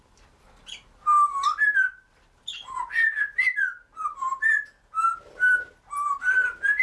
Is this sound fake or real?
real